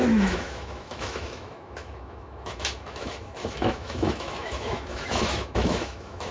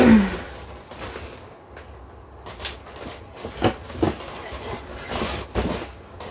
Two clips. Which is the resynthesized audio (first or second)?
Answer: first